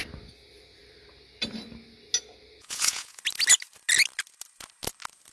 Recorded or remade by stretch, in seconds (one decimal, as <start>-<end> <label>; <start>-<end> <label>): 0.0-2.6 recorded; 2.6-3.2 remade; 3.2-5.3 recorded

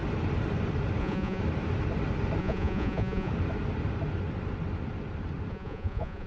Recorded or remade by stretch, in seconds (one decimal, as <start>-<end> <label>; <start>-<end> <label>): 0.0-1.0 recorded; 1.0-1.4 remade; 1.4-2.4 recorded; 2.4-3.3 remade; 3.3-5.5 recorded; 5.5-6.3 remade

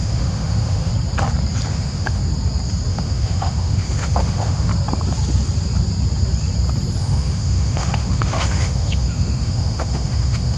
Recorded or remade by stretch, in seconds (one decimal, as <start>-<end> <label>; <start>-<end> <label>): 0.0-0.9 remade; 0.9-1.7 recorded; 1.7-2.2 remade; 2.2-2.9 recorded; 2.9-4.7 remade; 4.7-7.0 recorded; 7.0-10.6 remade

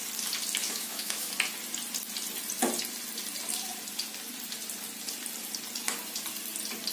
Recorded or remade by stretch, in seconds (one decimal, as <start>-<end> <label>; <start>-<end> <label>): 0.0-0.6 recorded; 0.6-1.3 remade; 1.3-6.9 recorded

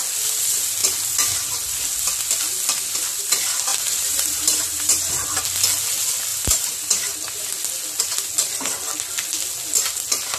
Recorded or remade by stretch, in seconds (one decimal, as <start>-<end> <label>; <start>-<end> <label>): 0.0-3.7 recorded; 3.7-5.1 remade; 5.1-6.3 recorded; 6.3-7.2 remade; 7.2-10.4 recorded

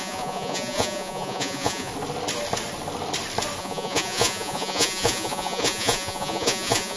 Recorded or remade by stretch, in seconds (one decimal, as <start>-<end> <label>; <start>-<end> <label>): 0.0-1.9 remade; 1.9-3.6 recorded; 3.6-7.0 remade

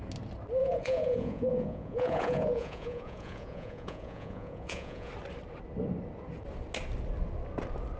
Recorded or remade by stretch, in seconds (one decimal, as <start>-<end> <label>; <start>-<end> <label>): 0.0-0.6 recorded; 0.6-5.1 remade; 5.1-8.0 recorded